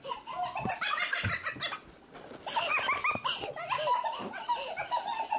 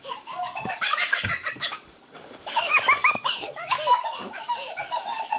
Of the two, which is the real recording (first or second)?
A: first